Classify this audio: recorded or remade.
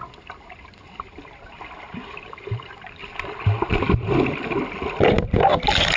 recorded